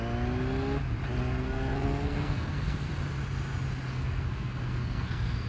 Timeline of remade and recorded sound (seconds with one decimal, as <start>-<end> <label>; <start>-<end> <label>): 0.0-1.4 recorded; 1.4-2.9 remade; 2.9-3.9 recorded; 3.9-5.5 remade